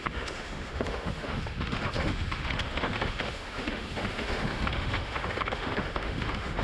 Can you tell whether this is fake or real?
fake